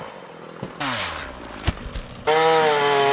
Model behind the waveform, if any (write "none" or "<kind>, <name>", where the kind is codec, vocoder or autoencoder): none